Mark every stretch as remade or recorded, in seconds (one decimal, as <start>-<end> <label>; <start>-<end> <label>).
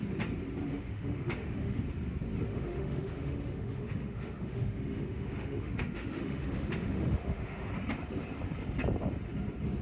0.0-0.7 recorded; 0.7-1.8 remade; 1.8-2.5 recorded; 2.5-7.7 remade; 7.7-9.8 recorded